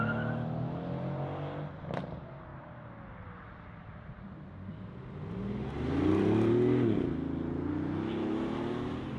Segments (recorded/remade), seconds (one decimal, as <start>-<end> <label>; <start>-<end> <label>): 0.0-2.5 recorded; 2.5-3.0 remade; 3.0-9.2 recorded